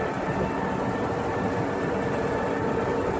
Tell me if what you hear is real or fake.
real